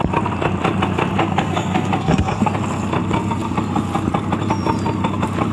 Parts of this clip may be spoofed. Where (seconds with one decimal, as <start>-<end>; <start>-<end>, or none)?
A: 1.2-2.5